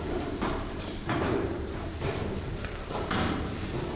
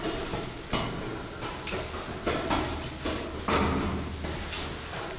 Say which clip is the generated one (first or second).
first